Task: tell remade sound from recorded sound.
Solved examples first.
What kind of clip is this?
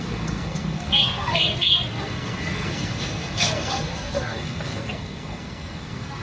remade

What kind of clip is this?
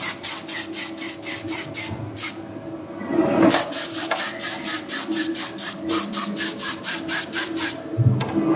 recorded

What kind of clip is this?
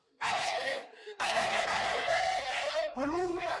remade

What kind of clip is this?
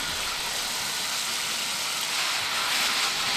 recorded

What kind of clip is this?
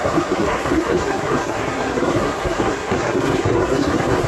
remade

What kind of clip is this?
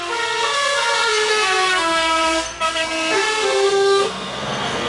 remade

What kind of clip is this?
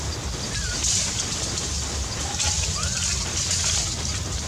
recorded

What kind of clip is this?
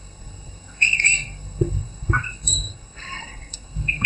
remade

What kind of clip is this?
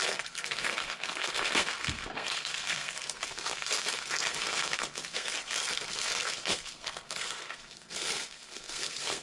remade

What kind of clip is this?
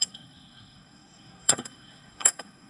remade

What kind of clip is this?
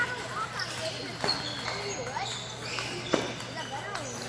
recorded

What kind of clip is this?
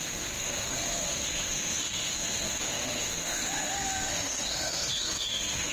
remade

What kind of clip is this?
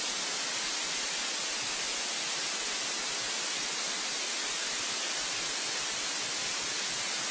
recorded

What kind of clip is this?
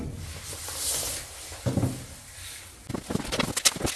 recorded